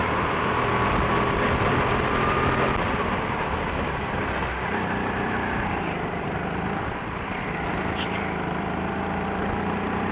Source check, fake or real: fake